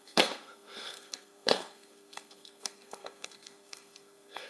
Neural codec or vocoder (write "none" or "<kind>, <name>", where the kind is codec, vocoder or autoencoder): codec, SNAC